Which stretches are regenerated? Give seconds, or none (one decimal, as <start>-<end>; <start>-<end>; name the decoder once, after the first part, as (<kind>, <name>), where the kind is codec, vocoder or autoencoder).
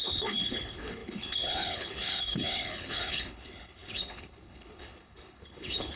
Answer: 0.0-6.0 (codec, HILCodec)